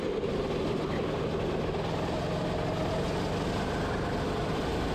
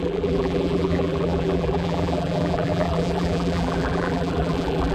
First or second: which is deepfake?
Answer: second